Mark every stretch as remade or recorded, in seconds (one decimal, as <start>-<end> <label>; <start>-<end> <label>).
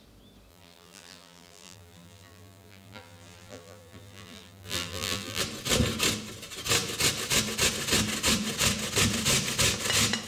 0.0-0.5 recorded; 0.5-5.4 remade; 5.4-10.3 recorded